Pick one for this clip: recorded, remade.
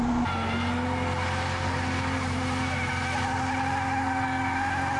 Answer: recorded